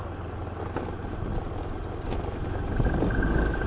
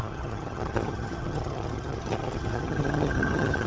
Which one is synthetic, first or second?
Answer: second